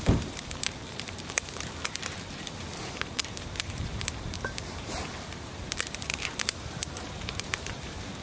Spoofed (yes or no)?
yes